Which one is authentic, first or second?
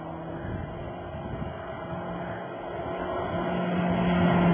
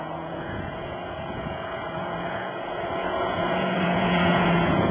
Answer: first